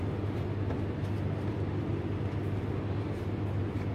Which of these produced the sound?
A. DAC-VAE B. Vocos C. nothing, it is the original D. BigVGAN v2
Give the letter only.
C